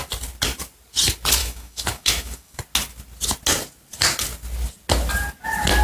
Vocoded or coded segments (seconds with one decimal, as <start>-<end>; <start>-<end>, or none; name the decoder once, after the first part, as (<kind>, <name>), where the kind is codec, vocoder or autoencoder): 1.4-2.6 (autoencoder, DAC-VAE)